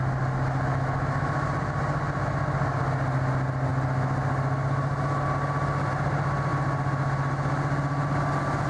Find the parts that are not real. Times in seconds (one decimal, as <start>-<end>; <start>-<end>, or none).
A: none

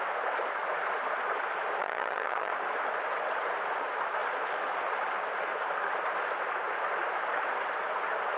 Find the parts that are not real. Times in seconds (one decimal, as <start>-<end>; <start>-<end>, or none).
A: 1.8-2.5

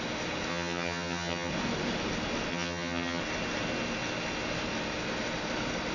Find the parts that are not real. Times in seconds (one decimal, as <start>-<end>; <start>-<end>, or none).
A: 0.5-1.5; 2.5-3.2

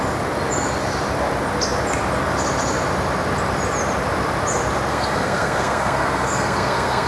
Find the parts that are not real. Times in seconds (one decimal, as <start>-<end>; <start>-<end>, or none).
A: 4.9-7.1

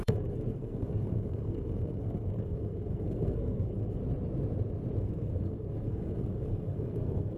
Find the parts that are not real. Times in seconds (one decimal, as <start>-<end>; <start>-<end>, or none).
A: 0.0-4.0; 5.0-7.4

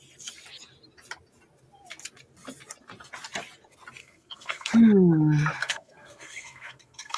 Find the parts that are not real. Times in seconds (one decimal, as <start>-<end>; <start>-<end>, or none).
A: 4.0-4.7; 5.6-7.2

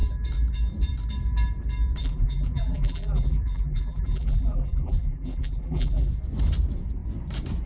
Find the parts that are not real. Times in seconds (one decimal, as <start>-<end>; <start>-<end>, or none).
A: 2.0-6.1

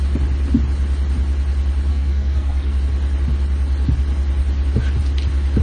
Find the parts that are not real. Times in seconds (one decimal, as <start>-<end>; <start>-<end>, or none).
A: 1.9-2.8